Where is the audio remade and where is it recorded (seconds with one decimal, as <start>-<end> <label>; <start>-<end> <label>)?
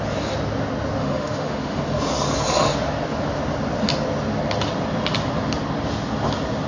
0.0-1.0 recorded; 1.0-1.8 remade; 1.8-6.7 recorded